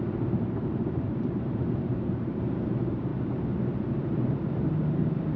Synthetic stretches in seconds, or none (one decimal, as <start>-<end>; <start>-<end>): 0.0-3.1; 4.0-5.4